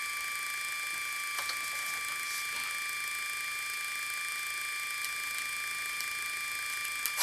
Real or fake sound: real